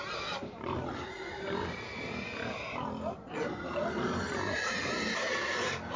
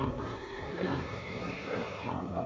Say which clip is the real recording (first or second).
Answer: first